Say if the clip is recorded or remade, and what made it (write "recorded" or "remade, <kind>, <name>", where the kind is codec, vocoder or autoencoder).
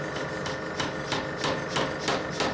recorded